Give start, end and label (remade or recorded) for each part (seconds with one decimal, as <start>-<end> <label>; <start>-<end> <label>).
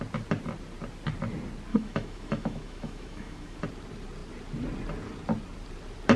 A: 0.0-1.7 recorded; 1.7-3.6 remade; 3.6-6.2 recorded